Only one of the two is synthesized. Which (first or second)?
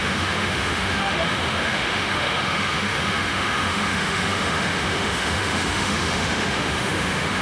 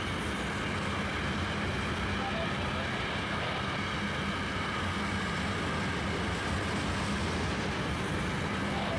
first